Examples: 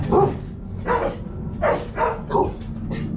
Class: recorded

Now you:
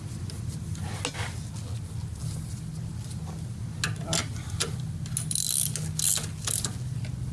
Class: recorded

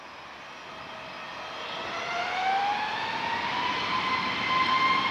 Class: recorded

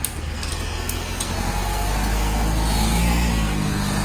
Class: remade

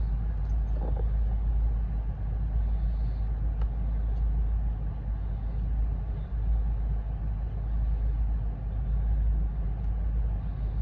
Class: recorded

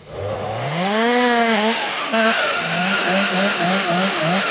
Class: remade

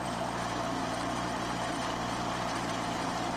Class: remade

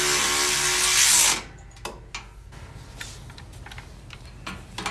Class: recorded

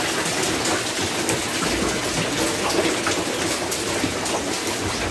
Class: recorded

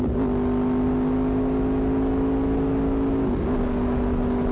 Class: recorded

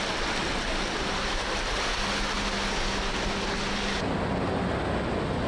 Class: recorded